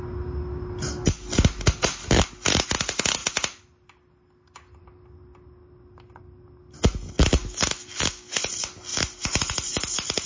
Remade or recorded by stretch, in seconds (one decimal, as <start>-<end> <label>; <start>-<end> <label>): 0.0-7.4 recorded; 7.4-8.3 remade; 8.3-10.3 recorded